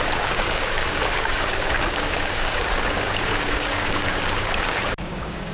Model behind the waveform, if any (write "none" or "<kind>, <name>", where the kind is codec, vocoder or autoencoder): codec, DAC